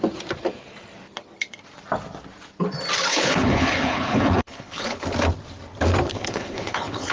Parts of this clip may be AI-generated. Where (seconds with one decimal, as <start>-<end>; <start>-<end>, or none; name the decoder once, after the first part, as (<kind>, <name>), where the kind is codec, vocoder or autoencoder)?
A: 3.1-5.1 (codec, HILCodec); 6.1-7.1